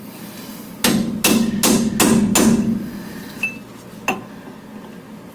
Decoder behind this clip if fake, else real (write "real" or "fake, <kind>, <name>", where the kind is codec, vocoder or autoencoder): real